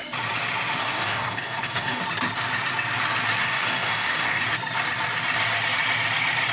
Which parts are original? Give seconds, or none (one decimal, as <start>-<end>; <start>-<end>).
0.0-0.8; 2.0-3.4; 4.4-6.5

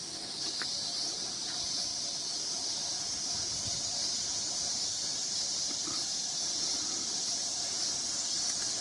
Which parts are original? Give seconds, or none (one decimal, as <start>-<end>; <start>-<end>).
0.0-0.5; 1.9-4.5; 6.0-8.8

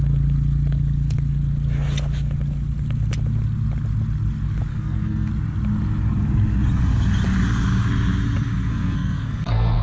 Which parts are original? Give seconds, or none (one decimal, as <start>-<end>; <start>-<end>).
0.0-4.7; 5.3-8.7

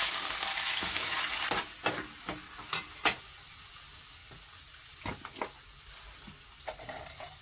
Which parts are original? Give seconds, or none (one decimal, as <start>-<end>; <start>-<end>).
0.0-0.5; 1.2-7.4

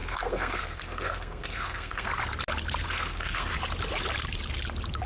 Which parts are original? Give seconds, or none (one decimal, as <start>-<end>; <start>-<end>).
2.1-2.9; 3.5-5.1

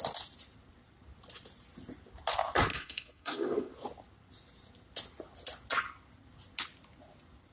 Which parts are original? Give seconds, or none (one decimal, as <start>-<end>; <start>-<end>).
0.0-2.7; 3.7-7.5